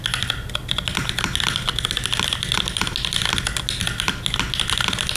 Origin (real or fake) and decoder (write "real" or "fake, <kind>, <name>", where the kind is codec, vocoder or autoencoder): real